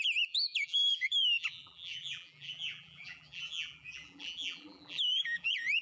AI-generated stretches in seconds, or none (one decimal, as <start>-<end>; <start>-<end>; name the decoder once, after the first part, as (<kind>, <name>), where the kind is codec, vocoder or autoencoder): 0.0-5.8 (vocoder, BigVGAN v2)